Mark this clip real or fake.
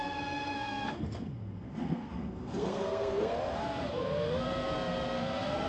fake